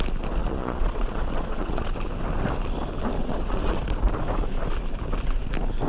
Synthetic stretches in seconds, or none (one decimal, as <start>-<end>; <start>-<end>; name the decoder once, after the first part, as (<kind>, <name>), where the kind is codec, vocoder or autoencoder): 0.4-1.9 (vocoder, Vocos); 3.2-4.1